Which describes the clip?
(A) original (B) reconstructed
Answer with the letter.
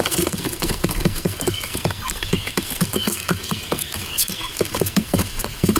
B